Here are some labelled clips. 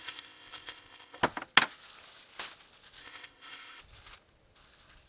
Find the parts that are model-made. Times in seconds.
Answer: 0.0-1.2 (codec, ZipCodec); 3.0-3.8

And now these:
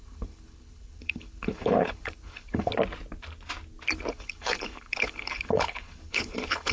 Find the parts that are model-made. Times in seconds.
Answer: 0.0-2.7 (codec, HILCodec); 4.1-6.7

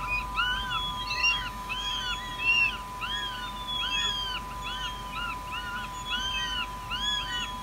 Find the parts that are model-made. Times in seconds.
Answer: 1.2-1.9 (autoencoder, DAC-VAE)

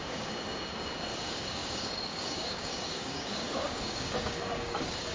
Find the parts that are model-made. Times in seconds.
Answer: 0.0-5.1 (codec, DAC)

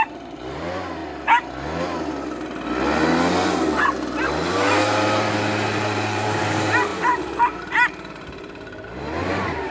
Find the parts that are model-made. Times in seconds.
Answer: 0.0-1.0 (vocoder, BigVGAN v2); 4.5-9.7

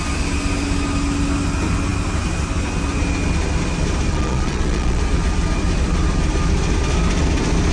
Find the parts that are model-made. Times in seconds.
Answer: 4.1-5.0 (vocoder, Vocos)

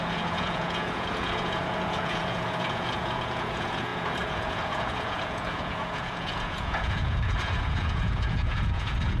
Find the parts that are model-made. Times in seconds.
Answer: 0.0-9.2 (vocoder, Vocos)

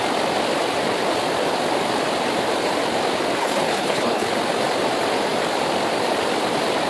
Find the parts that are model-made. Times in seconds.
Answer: 3.4-4.3 (codec, HILCodec)